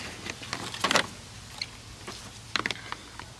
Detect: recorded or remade recorded